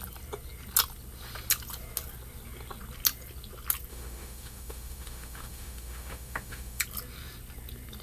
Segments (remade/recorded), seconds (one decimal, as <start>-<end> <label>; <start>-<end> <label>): 0.0-3.9 recorded; 3.9-6.8 remade; 6.8-8.0 recorded